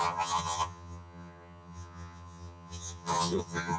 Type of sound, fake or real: fake